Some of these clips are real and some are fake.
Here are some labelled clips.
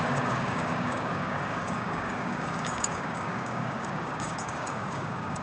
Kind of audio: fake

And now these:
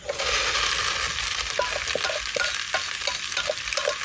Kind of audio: real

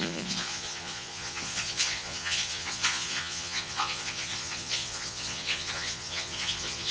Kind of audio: fake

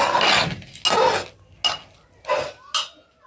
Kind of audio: real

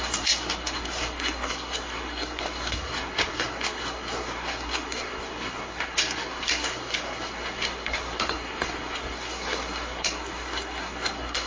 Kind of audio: fake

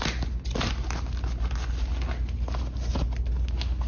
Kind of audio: real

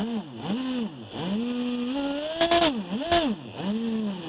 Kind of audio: real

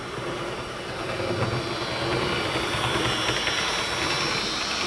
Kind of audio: real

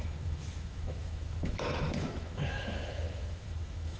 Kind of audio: fake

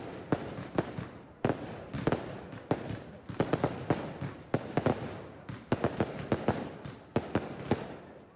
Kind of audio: real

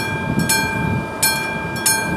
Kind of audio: real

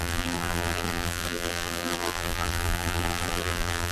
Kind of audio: fake